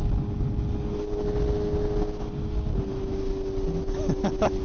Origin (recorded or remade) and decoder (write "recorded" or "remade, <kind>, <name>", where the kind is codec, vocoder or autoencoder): recorded